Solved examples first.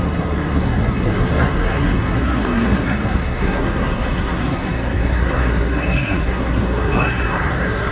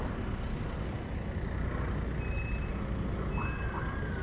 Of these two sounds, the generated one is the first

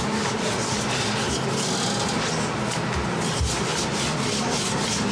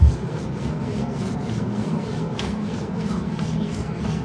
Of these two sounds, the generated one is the second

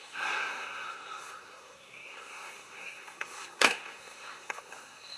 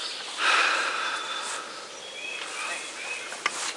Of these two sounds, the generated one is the first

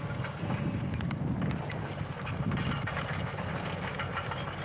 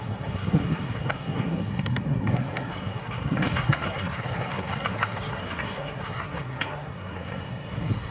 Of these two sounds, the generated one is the second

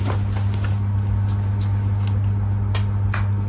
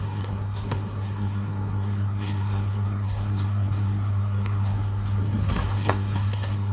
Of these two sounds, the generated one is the second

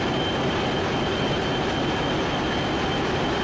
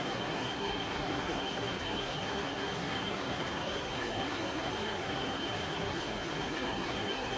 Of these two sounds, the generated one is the second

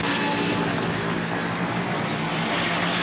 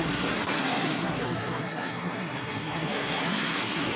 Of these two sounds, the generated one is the second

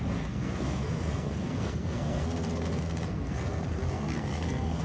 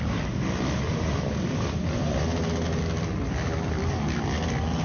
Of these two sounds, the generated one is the first